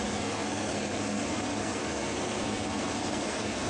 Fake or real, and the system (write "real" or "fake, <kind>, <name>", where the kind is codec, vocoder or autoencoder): fake, codec, SNAC